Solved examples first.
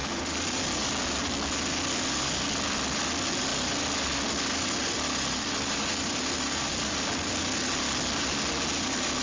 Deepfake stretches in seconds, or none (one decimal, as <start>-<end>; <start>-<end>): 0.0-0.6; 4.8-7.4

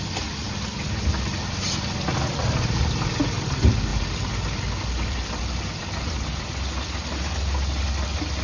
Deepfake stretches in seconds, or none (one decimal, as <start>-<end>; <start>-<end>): 3.9-5.4

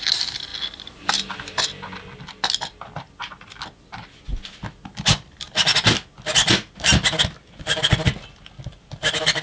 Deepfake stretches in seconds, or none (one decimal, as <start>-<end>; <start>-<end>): none